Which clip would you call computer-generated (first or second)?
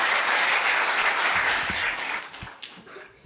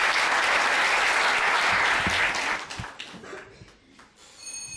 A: first